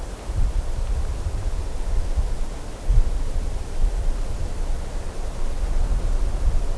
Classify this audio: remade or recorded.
recorded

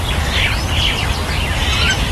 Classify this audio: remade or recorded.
recorded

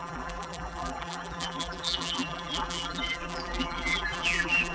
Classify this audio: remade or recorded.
remade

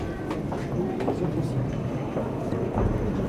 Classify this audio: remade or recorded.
recorded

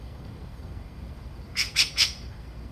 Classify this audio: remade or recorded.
remade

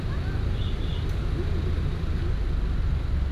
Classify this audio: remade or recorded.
recorded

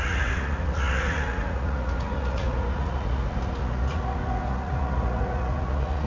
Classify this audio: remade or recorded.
remade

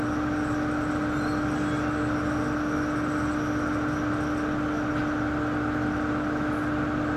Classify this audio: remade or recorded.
recorded